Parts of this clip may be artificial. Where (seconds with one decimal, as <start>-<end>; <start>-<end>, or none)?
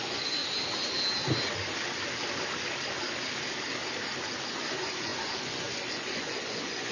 0.0-0.4; 4.5-6.9